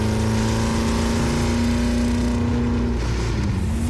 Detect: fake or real real